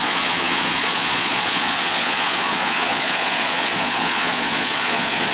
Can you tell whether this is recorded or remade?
remade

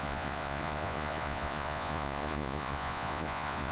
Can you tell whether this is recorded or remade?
remade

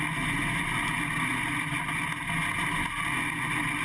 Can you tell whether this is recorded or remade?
recorded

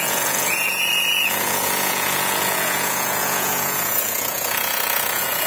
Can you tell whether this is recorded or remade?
remade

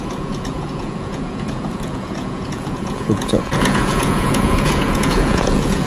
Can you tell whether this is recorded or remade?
remade